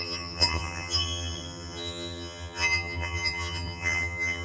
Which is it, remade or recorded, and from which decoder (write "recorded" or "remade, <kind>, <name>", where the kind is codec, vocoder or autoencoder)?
remade, vocoder, HiFi-GAN